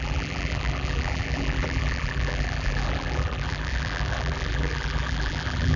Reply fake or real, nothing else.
fake